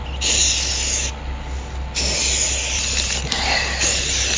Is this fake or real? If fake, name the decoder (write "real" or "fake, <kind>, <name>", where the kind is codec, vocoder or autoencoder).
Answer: real